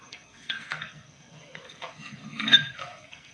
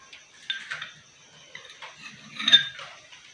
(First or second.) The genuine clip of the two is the second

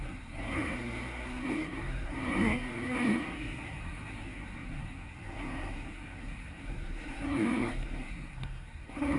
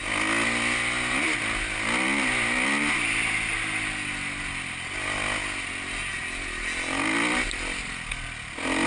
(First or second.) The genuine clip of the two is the second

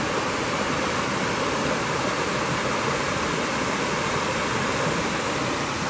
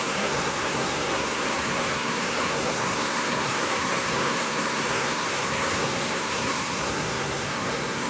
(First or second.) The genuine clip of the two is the first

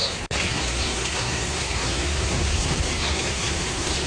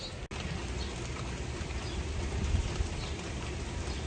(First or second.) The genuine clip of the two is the second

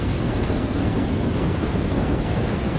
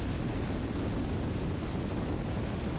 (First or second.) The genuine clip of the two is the second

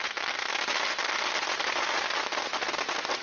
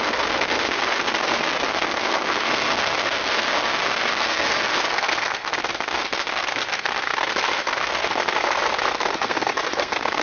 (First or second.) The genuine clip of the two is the first